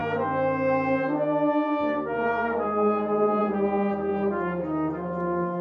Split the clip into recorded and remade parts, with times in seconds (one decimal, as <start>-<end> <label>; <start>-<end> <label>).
0.0-5.6 recorded

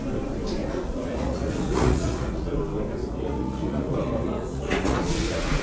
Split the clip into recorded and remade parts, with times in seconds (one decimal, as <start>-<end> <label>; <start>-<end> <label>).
0.0-0.6 recorded; 0.6-2.6 remade; 2.6-3.0 recorded; 3.0-5.6 remade

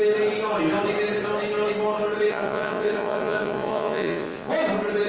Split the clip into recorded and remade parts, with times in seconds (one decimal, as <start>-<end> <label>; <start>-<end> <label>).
0.0-2.3 recorded; 2.3-4.5 remade; 4.5-5.1 recorded

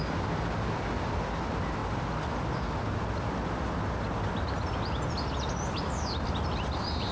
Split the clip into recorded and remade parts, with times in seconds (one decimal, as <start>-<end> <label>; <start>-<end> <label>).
0.0-7.1 recorded